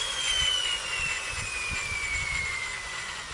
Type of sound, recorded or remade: remade